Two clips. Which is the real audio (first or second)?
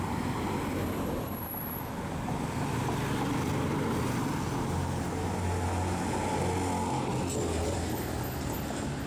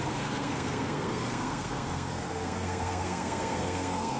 first